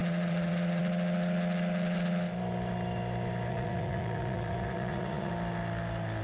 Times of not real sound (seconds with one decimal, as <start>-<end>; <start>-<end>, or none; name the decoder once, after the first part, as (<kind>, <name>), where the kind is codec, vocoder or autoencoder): 0.0-0.8 (vocoder, Vocos); 3.5-5.3

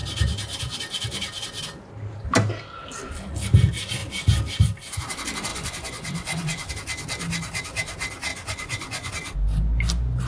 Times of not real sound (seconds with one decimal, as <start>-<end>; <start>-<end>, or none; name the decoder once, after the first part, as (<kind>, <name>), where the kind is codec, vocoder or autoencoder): 5.5-6.7 (vocoder, Vocos); 8.3-9.1

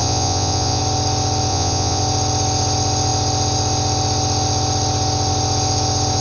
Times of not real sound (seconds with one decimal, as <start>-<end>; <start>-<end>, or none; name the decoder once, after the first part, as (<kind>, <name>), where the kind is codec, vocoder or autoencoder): 0.0-0.8 (vocoder, Vocos); 1.5-2.0

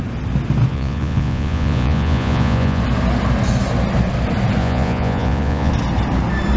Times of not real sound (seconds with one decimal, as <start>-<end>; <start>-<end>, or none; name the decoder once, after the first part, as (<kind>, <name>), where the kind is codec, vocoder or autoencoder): 0.7-2.8 (vocoder, Vocos); 4.6-5.7

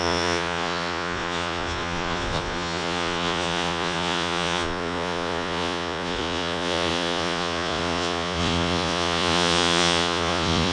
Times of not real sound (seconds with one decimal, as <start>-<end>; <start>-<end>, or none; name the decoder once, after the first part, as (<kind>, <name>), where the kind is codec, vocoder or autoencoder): 0.0-10.7 (vocoder, Vocos)

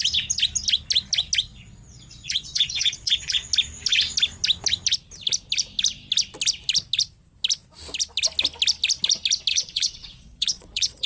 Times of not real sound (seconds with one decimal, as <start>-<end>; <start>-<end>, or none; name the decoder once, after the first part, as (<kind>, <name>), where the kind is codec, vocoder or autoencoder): 1.5-3.5 (vocoder, Vocos); 9.5-11.1